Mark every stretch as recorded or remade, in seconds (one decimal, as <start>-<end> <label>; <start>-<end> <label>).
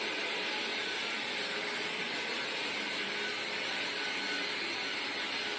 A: 0.0-5.6 recorded